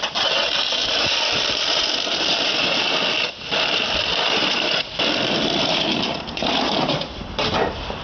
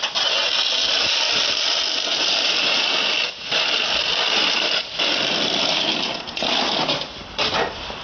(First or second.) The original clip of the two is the second